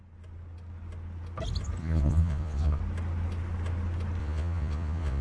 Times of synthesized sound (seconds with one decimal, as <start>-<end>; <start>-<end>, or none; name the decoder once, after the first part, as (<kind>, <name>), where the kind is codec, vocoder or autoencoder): 1.8-2.8 (vocoder, Vocos); 4.2-5.2